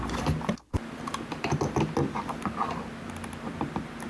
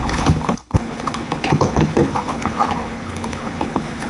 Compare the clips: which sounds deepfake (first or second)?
second